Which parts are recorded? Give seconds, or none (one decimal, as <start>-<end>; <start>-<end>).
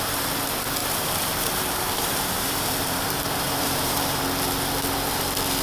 0.0-0.8; 4.2-5.6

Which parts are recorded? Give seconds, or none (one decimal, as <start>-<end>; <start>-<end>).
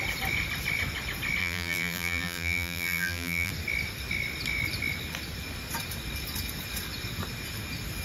0.0-1.4; 3.5-8.0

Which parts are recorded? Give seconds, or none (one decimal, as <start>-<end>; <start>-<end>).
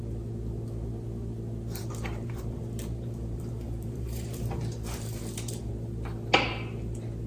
0.0-1.8; 5.7-7.3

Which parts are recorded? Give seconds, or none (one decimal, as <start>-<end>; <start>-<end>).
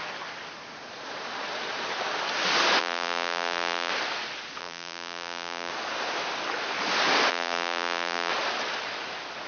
0.0-2.8; 3.9-4.6; 5.7-7.3; 8.3-9.5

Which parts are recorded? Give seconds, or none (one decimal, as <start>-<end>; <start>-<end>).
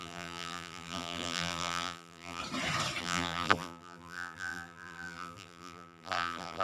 2.4-3.0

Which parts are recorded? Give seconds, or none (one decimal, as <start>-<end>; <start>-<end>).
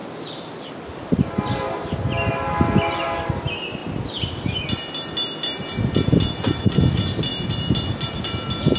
0.0-7.3; 8.2-8.8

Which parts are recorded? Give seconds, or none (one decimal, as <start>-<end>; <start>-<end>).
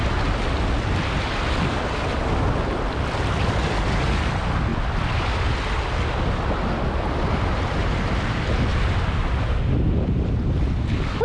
0.0-8.7; 9.7-11.2